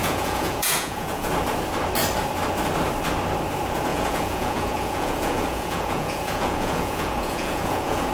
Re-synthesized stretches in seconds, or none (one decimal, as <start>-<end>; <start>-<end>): 0.0-1.3; 3.9-8.1